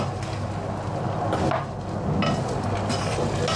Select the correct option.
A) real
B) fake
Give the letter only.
A